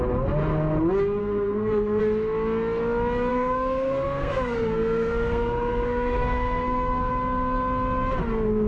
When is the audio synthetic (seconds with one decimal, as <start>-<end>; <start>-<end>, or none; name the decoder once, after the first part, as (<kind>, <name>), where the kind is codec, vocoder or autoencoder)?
1.2-2.0 (codec, SNAC); 3.3-7.1